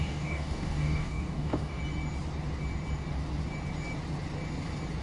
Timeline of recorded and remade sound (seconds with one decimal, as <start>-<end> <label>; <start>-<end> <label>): 0.0-1.8 remade; 1.8-5.0 recorded